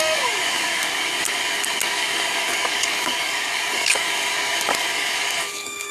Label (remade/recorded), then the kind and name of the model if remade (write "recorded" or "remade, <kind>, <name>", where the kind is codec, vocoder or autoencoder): remade, codec, DAC